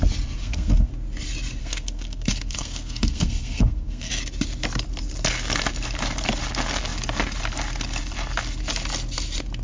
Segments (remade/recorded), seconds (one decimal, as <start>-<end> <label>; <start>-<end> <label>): 0.0-0.4 recorded; 0.4-0.9 remade; 0.9-1.6 recorded; 1.6-4.1 remade; 4.1-9.6 recorded

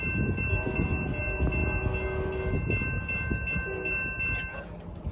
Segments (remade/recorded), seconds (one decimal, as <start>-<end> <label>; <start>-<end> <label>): 0.0-5.1 recorded

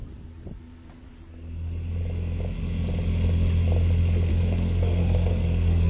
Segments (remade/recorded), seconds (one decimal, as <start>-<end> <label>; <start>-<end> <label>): 0.0-4.3 recorded; 4.3-5.9 remade